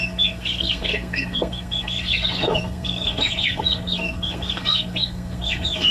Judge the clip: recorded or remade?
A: remade